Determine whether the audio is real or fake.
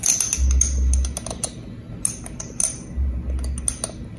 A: real